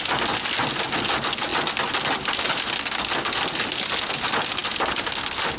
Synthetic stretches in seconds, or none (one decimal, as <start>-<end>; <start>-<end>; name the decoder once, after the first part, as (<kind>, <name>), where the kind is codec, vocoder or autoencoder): none